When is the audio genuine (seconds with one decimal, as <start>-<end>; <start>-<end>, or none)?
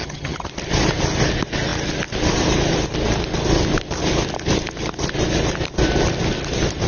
0.5-6.9